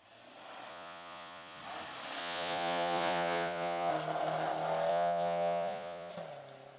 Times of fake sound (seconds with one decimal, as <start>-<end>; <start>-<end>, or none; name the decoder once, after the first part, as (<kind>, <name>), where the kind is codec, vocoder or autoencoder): 0.7-1.6 (vocoder, Vocos); 2.2-3.9; 4.9-6.1